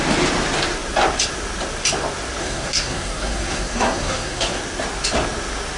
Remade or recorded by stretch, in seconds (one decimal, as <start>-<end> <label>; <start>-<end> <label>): 0.0-2.4 recorded; 2.4-4.6 remade; 4.6-5.8 recorded

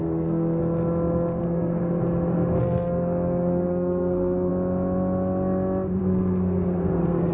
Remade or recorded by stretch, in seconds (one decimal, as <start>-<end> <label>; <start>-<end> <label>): 0.0-0.6 remade; 0.6-1.4 recorded; 1.4-1.8 remade; 1.8-2.6 recorded; 2.6-4.5 remade; 4.5-6.0 recorded; 6.0-7.3 remade

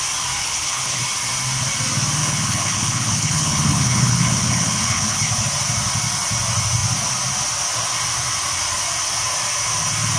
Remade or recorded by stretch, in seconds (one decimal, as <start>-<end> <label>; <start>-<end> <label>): 0.0-0.4 recorded; 0.4-1.0 remade; 1.0-2.2 recorded; 2.2-5.3 remade; 5.3-10.2 recorded